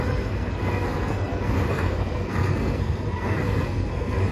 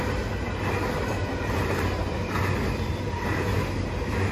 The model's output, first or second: first